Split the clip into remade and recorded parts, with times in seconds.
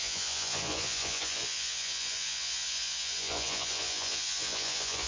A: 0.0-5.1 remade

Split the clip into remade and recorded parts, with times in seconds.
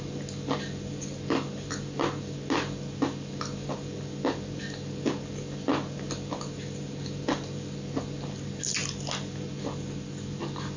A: 0.0-10.8 recorded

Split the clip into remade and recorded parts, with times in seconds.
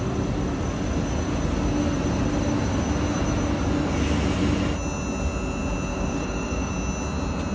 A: 0.0-5.9 recorded; 5.9-6.7 remade; 6.7-7.5 recorded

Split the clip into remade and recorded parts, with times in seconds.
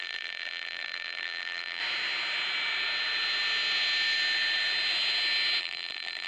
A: 0.0-1.8 remade; 1.8-5.6 recorded; 5.6-6.3 remade